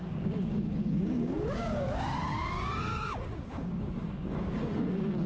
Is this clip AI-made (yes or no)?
yes